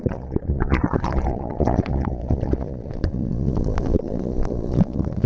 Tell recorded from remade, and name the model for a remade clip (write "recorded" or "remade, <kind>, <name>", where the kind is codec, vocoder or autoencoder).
remade, vocoder, Vocos